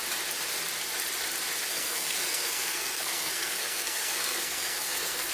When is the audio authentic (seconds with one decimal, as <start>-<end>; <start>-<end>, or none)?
0.0-1.7